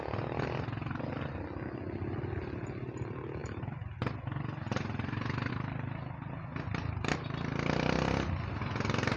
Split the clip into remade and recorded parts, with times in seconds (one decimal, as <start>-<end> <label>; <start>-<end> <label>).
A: 0.0-9.2 recorded